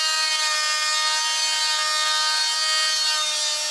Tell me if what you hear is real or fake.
real